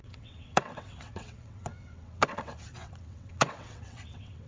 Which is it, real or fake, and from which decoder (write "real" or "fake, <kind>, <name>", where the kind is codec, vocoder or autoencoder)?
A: fake, vocoder, WaveNeXt